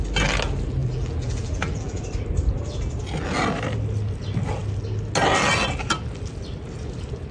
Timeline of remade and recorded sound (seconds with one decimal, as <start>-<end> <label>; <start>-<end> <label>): 0.0-0.8 recorded; 0.8-2.0 remade; 2.0-7.3 recorded